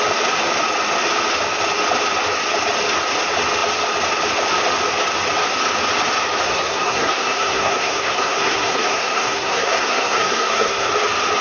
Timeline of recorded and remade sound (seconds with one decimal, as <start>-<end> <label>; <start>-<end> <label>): 0.0-6.4 recorded; 6.4-10.9 remade; 10.9-11.4 recorded